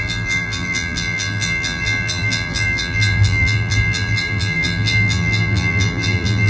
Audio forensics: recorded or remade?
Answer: remade